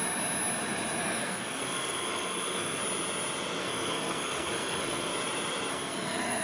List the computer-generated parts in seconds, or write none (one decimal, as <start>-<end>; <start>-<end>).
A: 1.0-2.8; 3.6-5.1; 5.7-6.4